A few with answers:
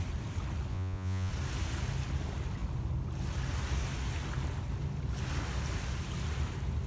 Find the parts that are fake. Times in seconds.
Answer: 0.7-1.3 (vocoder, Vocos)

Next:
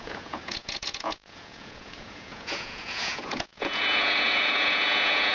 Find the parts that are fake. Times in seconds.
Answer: 0.0-5.3 (vocoder, Vocos)

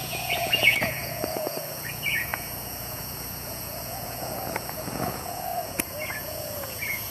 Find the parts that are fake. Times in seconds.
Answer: 0.0-7.1 (vocoder, Vocos)

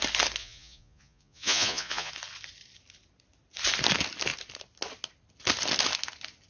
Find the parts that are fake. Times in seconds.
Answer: 0.4-2.1 (vocoder, Vocos)

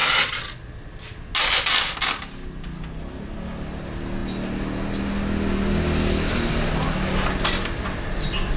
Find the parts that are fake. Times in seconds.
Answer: none

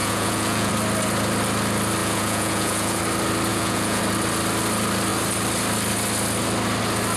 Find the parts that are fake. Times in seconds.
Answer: 0.0-0.7 (vocoder, Vocos); 2.0-3.0; 3.5-4.0

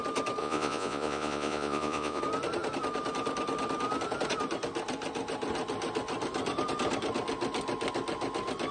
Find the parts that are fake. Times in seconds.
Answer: 0.4-2.2 (vocoder, Vocos)

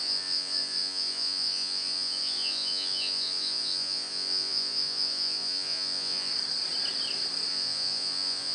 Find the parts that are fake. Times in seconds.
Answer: 0.0-6.3 (vocoder, Vocos); 7.5-8.5